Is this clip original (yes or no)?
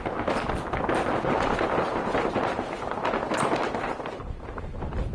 yes